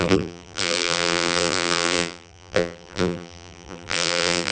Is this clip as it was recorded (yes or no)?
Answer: no